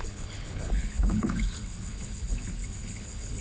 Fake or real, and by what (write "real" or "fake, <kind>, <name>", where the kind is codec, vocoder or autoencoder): fake, codec, HILCodec